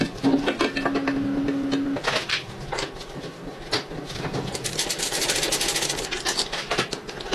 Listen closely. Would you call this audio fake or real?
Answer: real